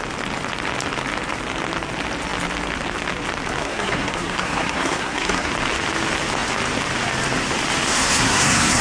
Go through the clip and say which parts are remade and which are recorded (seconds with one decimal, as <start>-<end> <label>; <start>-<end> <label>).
0.0-3.6 recorded; 3.6-5.5 remade; 5.5-7.9 recorded; 7.9-8.8 remade